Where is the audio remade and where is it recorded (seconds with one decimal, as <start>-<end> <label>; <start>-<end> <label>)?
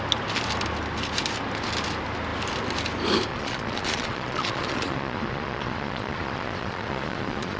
0.0-3.3 recorded; 3.3-7.6 remade